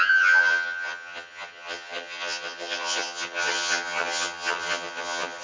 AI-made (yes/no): yes